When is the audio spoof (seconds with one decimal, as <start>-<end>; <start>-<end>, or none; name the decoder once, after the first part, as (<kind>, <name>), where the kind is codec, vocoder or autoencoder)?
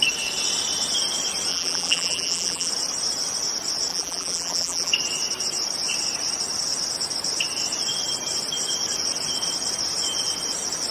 1.5-2.7 (vocoder, BigVGAN v2); 3.9-4.9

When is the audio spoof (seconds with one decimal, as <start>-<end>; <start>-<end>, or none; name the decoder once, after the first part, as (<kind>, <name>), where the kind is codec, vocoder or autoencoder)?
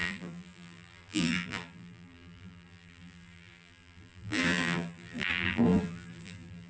0.0-6.7 (vocoder, BigVGAN v2)